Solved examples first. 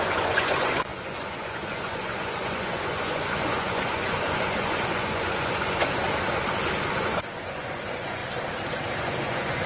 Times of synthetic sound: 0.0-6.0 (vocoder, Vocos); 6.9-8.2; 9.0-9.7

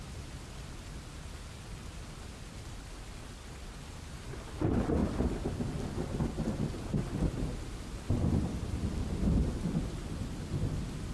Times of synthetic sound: none

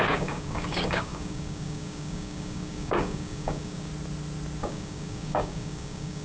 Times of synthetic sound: 0.0-3.9 (codec, DAC); 4.6-6.2